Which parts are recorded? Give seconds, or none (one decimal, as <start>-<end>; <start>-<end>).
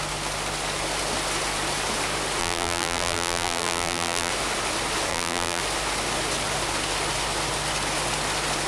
0.0-2.4; 4.3-5.1; 5.6-8.7